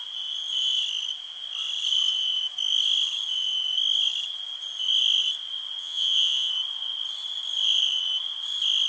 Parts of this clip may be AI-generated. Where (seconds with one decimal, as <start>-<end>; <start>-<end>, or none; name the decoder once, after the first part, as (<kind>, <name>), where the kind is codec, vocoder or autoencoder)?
5.8-6.5 (vocoder, Vocos)